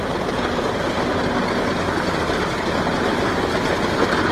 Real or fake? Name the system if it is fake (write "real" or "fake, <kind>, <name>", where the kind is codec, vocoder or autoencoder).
real